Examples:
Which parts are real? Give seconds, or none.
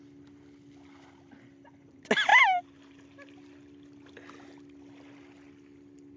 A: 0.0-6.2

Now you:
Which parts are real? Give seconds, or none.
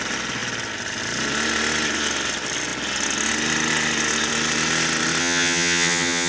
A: 0.0-5.2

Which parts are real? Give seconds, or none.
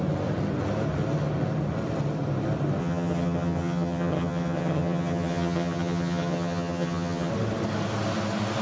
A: 0.0-2.8; 7.3-8.6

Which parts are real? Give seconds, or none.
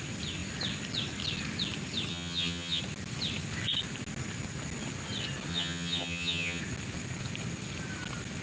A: 0.0-2.1; 2.8-5.5; 6.6-8.4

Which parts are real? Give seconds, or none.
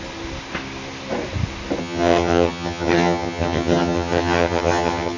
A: 0.0-1.8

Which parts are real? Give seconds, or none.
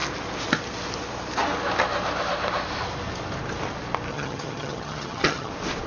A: 0.0-4.1; 5.5-5.9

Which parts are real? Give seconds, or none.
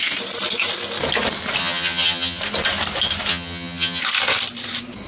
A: 0.0-1.6; 2.4-3.3; 4.0-5.1